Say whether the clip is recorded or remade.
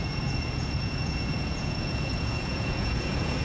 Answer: remade